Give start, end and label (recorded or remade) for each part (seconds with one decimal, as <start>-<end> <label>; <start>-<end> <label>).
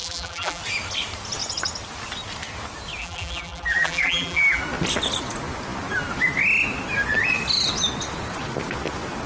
0.0-0.6 remade; 0.6-3.0 recorded; 3.0-4.6 remade; 4.6-9.3 recorded